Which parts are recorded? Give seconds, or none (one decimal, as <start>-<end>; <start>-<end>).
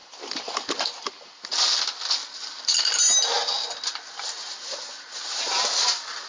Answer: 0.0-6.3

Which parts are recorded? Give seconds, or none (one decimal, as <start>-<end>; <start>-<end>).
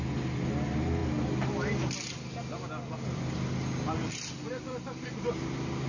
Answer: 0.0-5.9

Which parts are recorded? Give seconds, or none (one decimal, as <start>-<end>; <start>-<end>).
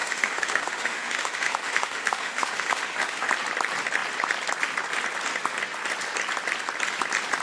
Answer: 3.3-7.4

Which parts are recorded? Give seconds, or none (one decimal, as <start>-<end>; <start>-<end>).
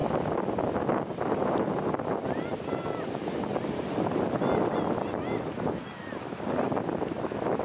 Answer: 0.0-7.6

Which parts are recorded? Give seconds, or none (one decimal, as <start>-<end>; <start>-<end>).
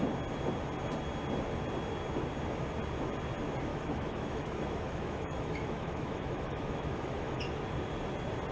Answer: 0.0-3.7; 7.4-8.5